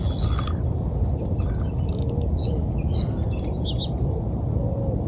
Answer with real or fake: real